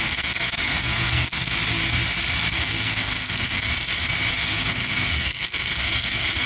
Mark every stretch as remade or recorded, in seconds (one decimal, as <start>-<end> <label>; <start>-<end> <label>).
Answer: 0.0-1.5 remade; 1.5-2.5 recorded; 2.5-3.7 remade; 3.7-4.3 recorded; 4.3-6.5 remade